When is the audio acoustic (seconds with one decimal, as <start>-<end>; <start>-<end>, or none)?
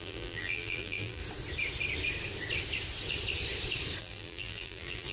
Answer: 1.2-4.0